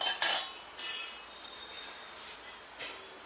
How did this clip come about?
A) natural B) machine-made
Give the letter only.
A